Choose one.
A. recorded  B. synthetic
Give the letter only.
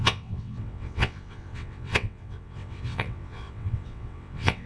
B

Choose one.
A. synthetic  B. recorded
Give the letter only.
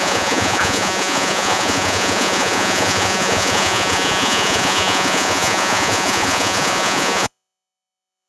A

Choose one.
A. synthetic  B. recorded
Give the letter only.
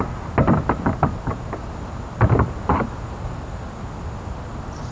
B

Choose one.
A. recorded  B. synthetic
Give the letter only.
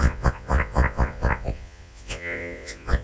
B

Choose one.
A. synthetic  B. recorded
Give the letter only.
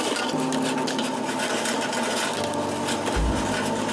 B